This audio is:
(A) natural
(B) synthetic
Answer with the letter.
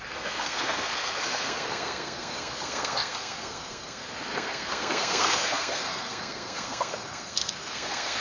B